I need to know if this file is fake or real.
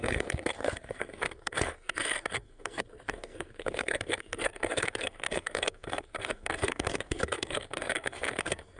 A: fake